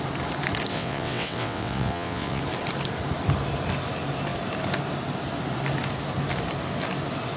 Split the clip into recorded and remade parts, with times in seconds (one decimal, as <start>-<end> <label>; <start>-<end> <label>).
0.0-0.7 recorded; 0.7-2.4 remade; 2.4-7.4 recorded